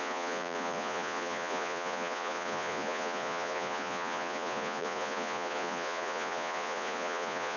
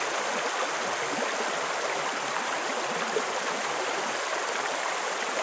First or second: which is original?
second